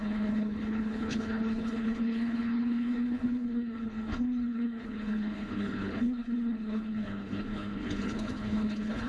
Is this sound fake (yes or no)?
yes